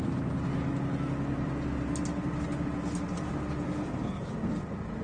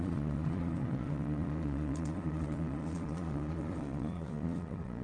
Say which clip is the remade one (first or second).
second